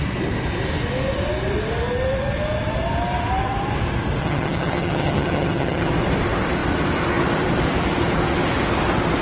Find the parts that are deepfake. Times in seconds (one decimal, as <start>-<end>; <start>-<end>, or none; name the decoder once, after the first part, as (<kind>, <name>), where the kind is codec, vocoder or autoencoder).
4.2-5.9 (vocoder, HiFi-GAN)